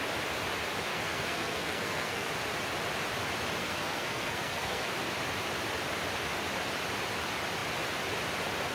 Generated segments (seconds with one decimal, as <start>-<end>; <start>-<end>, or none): 0.9-2.3; 3.6-4.9